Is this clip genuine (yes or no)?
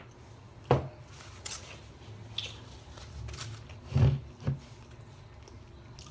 yes